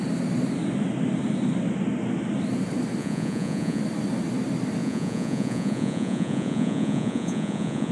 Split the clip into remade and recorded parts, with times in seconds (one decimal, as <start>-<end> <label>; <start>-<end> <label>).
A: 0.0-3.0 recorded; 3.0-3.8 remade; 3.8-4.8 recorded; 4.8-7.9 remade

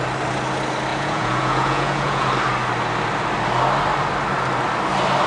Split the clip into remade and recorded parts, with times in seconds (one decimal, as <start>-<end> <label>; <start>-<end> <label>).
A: 0.0-0.9 recorded; 0.9-2.3 remade; 2.3-5.3 recorded

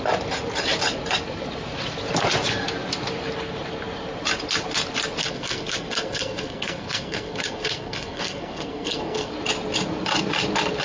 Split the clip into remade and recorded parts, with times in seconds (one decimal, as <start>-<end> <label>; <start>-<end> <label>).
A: 0.0-5.2 recorded; 5.2-9.3 remade; 9.3-10.8 recorded